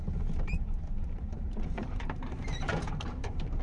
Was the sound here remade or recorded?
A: remade